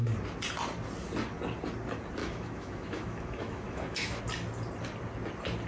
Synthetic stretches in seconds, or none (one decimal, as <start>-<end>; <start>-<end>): 2.2-4.2